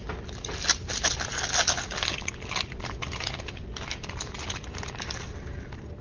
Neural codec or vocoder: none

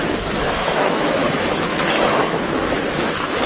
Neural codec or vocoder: autoencoder, DAC-VAE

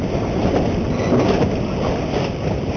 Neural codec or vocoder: none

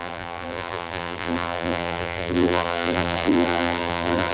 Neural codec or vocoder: vocoder, BigVGAN v2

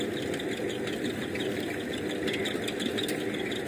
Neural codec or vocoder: none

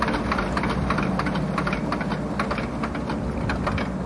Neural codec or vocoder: none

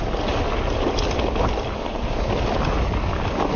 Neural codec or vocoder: none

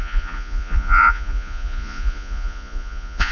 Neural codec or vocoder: vocoder, Vocos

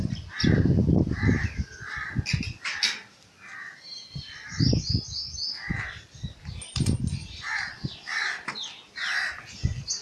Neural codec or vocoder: none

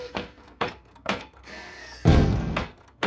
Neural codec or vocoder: codec, SNAC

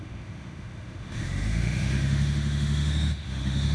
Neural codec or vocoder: autoencoder, DAC-VAE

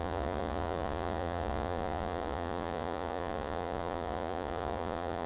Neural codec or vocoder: vocoder, Vocos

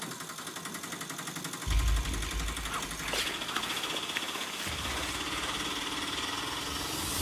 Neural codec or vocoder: none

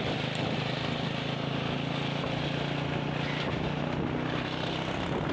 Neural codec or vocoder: none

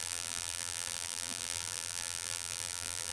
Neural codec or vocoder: vocoder, BigVGAN v2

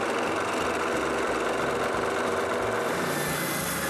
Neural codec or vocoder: none